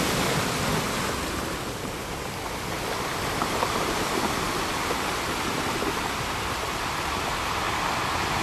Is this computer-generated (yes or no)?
no